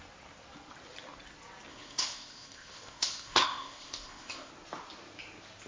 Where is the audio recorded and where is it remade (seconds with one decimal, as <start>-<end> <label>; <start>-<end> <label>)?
0.0-1.7 recorded; 1.7-4.5 remade; 4.5-5.7 recorded